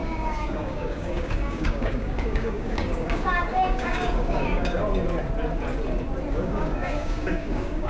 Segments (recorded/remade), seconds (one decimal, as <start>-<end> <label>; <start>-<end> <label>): 0.0-4.8 remade; 4.8-6.3 recorded; 6.3-7.9 remade

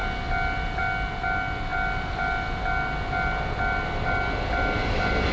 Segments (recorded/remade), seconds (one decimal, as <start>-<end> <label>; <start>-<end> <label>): 0.0-5.3 recorded

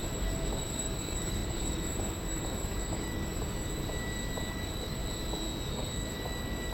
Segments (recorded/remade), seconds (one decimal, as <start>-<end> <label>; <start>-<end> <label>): 0.0-3.3 remade; 3.3-4.5 recorded; 4.5-5.0 remade; 5.0-5.7 recorded; 5.7-6.7 remade

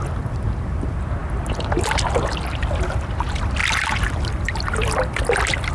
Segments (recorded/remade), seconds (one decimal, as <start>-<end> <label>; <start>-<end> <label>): 0.0-5.7 recorded

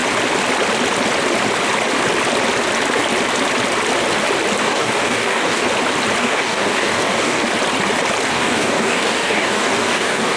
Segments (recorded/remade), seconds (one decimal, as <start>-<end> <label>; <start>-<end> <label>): 0.0-4.6 recorded; 4.6-5.6 remade; 5.6-6.2 recorded; 6.2-7.4 remade; 7.4-8.3 recorded; 8.3-10.4 remade

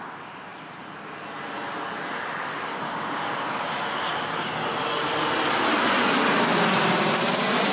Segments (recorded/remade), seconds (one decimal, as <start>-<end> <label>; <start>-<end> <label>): 0.0-7.7 recorded

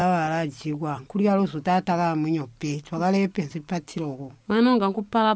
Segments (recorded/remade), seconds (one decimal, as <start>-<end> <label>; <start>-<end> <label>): 0.0-3.9 recorded; 3.9-5.4 remade